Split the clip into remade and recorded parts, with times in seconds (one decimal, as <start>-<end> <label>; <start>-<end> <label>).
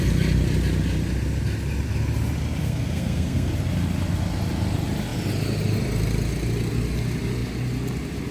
0.0-2.6 recorded; 2.6-3.5 remade; 3.5-8.3 recorded